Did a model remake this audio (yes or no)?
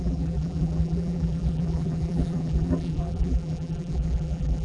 yes